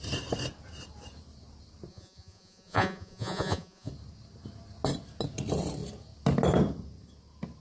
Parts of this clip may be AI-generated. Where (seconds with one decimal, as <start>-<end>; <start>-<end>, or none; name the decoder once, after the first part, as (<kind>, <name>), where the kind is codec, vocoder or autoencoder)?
1.9-3.9 (vocoder, Vocos)